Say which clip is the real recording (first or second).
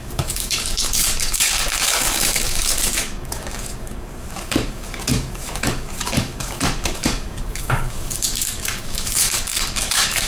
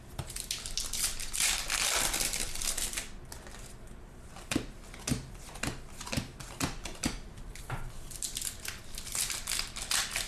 second